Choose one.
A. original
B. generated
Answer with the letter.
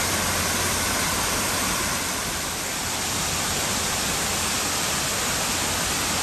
B